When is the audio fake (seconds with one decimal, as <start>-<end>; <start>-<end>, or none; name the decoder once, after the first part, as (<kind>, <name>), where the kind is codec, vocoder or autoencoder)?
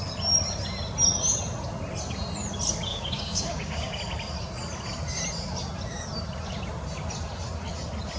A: 2.9-4.0 (codec, DAC)